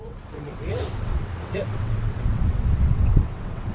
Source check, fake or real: fake